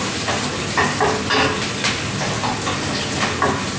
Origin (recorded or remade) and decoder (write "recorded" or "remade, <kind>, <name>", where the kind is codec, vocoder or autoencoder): recorded